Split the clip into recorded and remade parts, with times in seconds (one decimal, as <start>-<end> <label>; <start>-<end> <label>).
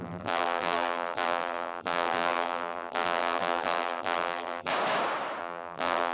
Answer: 0.0-4.7 remade; 4.7-5.4 recorded; 5.4-6.1 remade